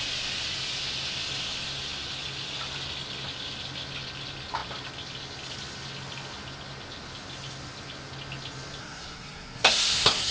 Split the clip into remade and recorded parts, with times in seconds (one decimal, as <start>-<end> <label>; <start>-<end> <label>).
0.0-8.8 recorded; 8.8-10.3 remade